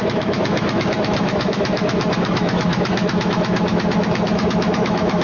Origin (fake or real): fake